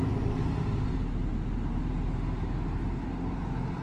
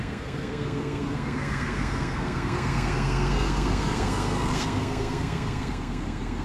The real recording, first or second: first